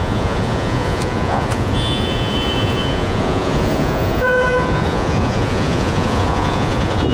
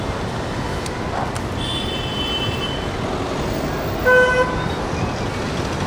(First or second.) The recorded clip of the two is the second